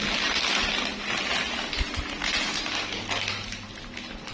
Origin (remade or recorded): recorded